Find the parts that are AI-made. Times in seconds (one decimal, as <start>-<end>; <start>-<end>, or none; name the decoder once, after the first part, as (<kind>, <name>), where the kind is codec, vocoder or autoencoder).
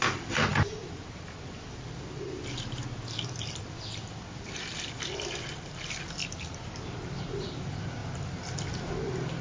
0.0-6.2 (vocoder, BigVGAN v2); 7.2-9.4